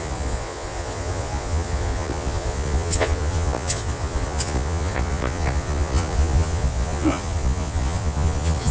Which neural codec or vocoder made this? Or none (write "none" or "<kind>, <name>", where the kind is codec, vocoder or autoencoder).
vocoder, Vocos